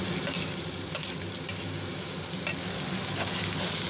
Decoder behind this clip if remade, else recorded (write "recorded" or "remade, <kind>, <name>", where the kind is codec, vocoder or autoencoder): recorded